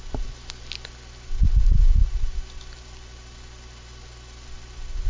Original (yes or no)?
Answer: yes